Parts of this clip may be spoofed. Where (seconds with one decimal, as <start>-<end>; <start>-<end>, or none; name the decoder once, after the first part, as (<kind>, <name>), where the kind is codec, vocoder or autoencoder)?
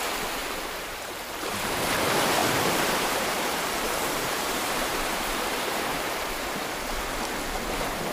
0.4-1.1 (vocoder, BigVGAN v2); 2.4-6.8